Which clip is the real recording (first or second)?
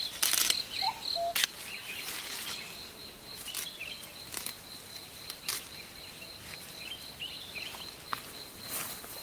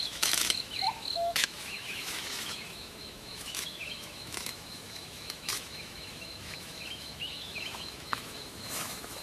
first